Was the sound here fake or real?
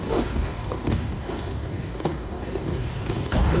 fake